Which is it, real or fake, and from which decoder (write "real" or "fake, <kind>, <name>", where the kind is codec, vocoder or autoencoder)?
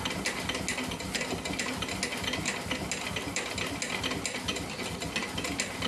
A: real